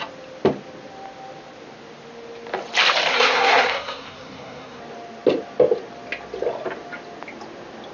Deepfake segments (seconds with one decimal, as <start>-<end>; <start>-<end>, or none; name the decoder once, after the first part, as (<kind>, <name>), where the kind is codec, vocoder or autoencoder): 3.1-4.8 (codec, SNAC)